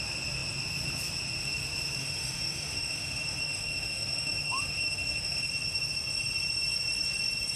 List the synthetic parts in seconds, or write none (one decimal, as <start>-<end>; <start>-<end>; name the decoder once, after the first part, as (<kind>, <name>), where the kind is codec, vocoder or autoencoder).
2.0-5.5 (autoencoder, DAC-VAE)